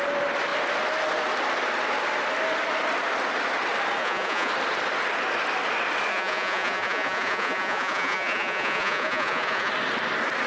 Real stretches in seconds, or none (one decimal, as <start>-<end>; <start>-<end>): 0.0-4.0; 4.5-6.1; 9.7-10.5

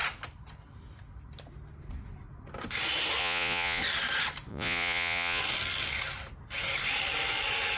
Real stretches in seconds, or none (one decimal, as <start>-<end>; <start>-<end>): 0.0-3.2; 3.8-4.5; 5.4-7.8

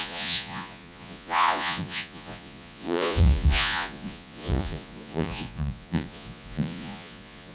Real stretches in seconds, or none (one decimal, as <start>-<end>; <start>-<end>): none

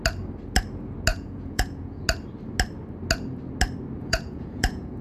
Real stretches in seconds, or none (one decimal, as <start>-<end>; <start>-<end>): 0.0-1.1; 2.0-4.0